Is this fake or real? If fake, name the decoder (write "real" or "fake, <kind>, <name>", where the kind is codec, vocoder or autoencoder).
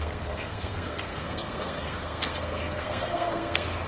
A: fake, codec, SNAC